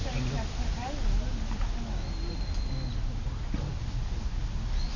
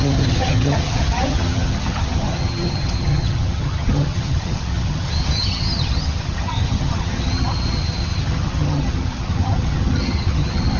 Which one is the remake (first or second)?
second